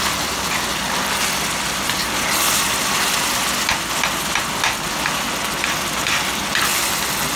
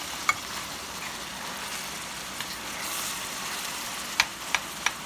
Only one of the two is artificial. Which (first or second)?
second